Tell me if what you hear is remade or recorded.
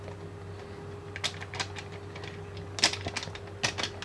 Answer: recorded